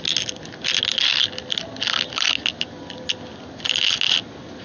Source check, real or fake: real